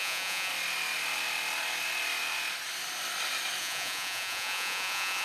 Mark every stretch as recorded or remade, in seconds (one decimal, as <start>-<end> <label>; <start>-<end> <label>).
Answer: 0.0-0.5 remade; 0.5-3.6 recorded; 3.6-5.2 remade